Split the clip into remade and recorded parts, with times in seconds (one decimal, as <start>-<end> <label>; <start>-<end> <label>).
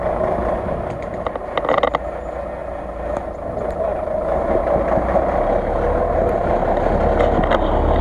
0.0-8.0 recorded